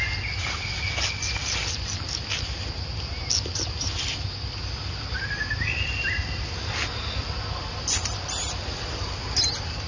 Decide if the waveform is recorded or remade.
recorded